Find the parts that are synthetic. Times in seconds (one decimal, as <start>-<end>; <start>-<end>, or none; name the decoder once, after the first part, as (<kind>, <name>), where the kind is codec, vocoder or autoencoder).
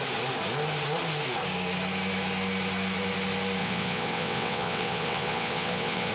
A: 3.6-6.1 (vocoder, WaveNeXt)